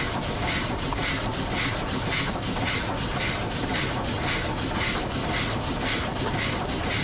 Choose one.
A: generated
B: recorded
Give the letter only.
B